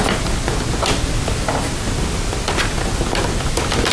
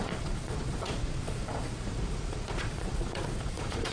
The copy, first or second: second